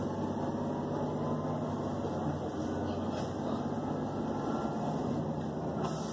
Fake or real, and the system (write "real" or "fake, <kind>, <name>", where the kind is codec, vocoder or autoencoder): real